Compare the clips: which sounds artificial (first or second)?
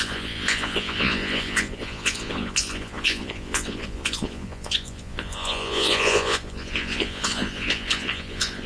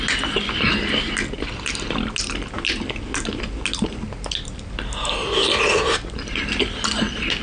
first